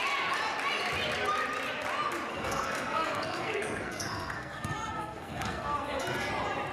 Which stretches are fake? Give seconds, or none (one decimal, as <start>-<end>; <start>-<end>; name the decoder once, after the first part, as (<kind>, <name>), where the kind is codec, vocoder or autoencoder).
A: 2.3-6.3 (codec, SNAC)